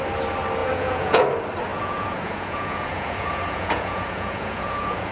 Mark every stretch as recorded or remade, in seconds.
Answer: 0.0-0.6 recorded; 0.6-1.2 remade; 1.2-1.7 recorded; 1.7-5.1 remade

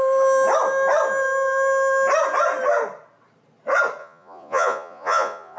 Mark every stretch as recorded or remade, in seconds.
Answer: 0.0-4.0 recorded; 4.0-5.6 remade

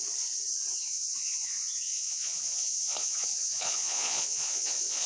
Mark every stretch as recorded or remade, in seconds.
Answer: 0.0-0.7 recorded; 0.7-5.1 remade

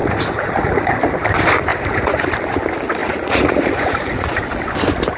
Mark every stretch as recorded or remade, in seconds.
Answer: 0.0-0.8 remade; 0.8-1.7 recorded; 1.7-2.2 remade; 2.2-3.0 recorded; 3.0-4.4 remade; 4.4-5.2 recorded

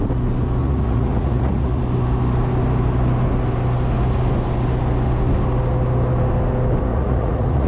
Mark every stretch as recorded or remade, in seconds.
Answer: 0.0-0.6 recorded; 0.6-1.8 remade; 1.8-6.9 recorded; 6.9-7.7 remade

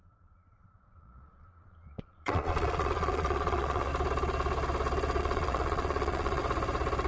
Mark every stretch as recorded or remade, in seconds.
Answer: 0.0-3.9 remade; 3.9-5.2 recorded; 5.2-6.4 remade; 6.4-7.1 recorded